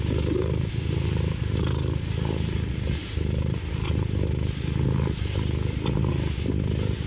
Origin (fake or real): real